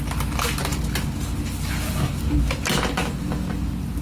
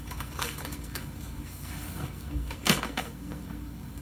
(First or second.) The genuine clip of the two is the first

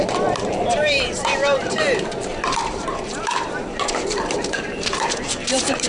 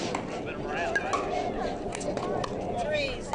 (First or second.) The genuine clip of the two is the second